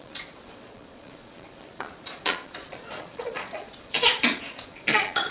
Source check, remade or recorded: remade